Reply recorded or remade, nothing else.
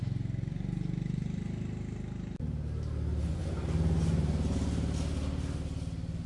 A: recorded